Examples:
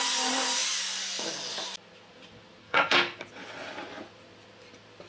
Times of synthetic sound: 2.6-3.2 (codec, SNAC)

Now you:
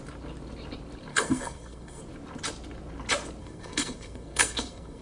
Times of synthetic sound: 1.1-2.0 (codec, SNAC); 3.4-5.0

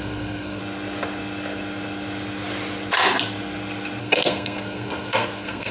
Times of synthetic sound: 0.0-0.6 (codec, SNAC); 4.0-5.7

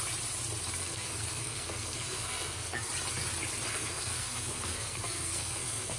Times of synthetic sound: 0.8-2.9 (codec, SNAC); 3.7-6.0

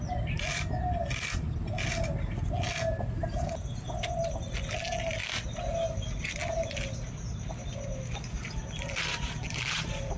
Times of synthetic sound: none

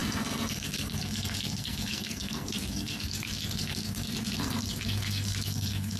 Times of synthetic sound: 0.0-6.0 (codec, SNAC)